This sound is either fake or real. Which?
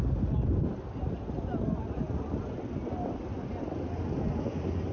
real